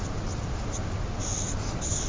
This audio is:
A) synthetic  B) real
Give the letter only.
B